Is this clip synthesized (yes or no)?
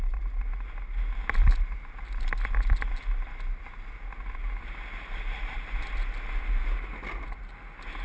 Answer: no